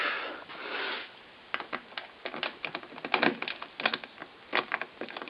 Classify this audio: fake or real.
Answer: real